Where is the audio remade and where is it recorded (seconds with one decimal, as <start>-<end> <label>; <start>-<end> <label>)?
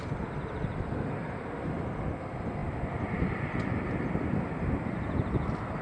0.0-5.8 recorded